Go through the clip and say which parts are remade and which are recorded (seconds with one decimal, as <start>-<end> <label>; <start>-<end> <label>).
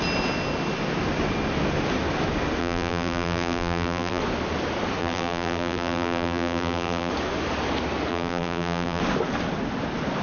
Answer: 0.0-2.6 recorded; 2.6-4.2 remade; 4.2-5.0 recorded; 5.0-7.1 remade; 7.1-8.1 recorded; 8.1-9.0 remade; 9.0-10.2 recorded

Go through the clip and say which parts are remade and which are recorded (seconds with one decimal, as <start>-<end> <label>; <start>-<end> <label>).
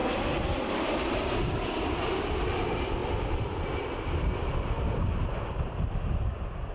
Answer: 0.0-6.7 recorded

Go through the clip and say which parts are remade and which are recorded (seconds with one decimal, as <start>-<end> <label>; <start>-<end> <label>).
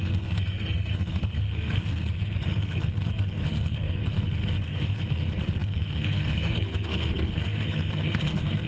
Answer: 0.0-8.7 remade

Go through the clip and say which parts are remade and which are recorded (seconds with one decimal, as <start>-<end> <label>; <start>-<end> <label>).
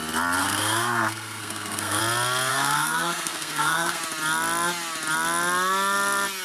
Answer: 0.0-0.4 recorded; 0.4-2.0 remade; 2.0-2.5 recorded; 2.5-4.0 remade; 4.0-6.4 recorded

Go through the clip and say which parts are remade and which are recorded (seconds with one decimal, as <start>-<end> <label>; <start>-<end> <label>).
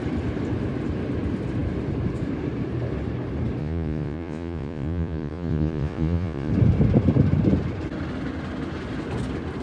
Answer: 0.0-3.6 recorded; 3.6-6.5 remade; 6.5-9.6 recorded